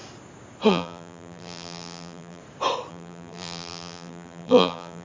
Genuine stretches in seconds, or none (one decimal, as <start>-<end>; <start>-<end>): 0.0-0.7; 2.4-2.9